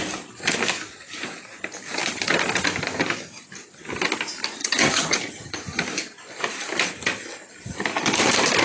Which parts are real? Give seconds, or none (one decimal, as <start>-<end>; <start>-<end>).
0.0-4.6; 5.6-8.6